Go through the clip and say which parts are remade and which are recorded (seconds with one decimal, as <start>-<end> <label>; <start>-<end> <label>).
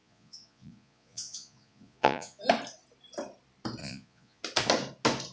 0.0-2.4 remade; 2.4-3.8 recorded; 3.8-4.4 remade; 4.4-5.3 recorded